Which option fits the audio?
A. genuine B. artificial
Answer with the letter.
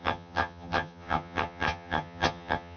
B